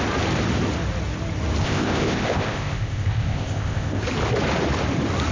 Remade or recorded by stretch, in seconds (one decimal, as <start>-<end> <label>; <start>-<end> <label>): 0.0-1.6 recorded; 1.6-4.0 remade; 4.0-5.3 recorded